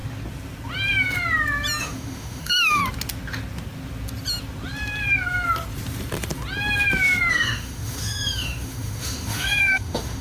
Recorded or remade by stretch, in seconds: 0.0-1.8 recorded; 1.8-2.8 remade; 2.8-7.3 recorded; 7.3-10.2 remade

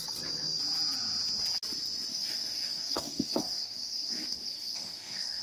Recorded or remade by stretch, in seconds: 0.0-2.1 recorded; 2.1-5.4 remade

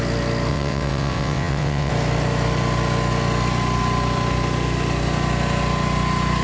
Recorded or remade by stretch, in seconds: 0.0-0.5 recorded; 0.5-1.9 remade; 1.9-6.4 recorded

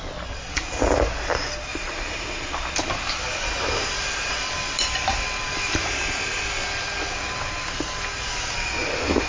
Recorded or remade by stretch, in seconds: 0.0-1.7 recorded; 1.7-6.4 remade; 6.4-9.3 recorded

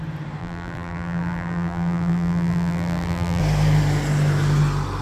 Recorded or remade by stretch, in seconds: 0.0-0.4 recorded; 0.4-3.4 remade; 3.4-5.0 recorded